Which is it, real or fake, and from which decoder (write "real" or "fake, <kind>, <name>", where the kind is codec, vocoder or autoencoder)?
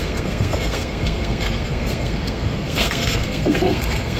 fake, codec, SNAC